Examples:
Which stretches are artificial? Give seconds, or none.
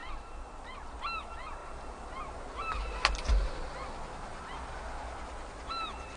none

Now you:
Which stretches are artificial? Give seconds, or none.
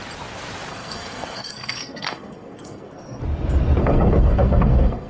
0.7-3.2 (codec, SNAC); 3.8-5.1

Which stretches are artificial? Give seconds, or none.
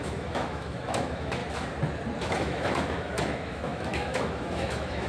0.0-1.4 (autoencoder, DAC-VAE); 2.2-5.1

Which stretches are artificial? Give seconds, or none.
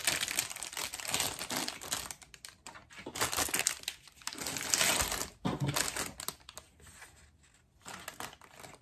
none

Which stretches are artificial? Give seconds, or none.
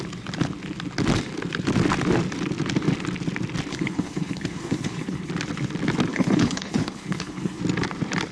3.7-5.3 (codec, HILCodec); 6.1-7.6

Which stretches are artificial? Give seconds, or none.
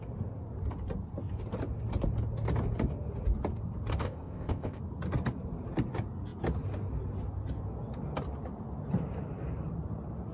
4.0-4.8 (codec, ZipCodec)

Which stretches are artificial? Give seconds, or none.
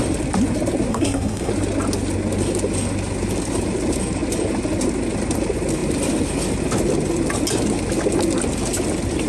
0.9-1.5 (codec, SNAC)